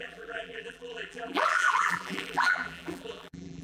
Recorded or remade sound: remade